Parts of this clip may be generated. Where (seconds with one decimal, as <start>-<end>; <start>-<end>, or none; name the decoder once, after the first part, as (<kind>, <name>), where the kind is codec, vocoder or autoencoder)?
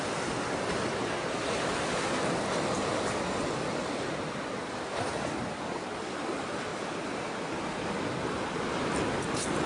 5.1-6.2 (vocoder, BigVGAN v2); 6.7-7.6